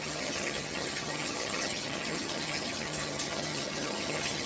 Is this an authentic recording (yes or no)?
no